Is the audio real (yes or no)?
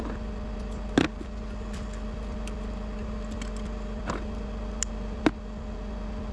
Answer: yes